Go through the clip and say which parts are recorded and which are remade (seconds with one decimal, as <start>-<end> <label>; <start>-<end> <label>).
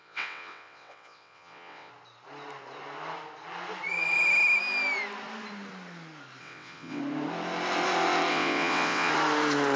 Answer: 0.0-1.9 remade; 1.9-6.4 recorded; 6.4-7.0 remade; 7.0-8.3 recorded; 8.3-9.1 remade; 9.1-9.8 recorded